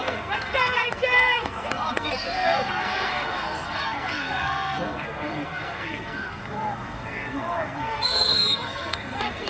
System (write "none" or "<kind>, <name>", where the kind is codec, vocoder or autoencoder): codec, SNAC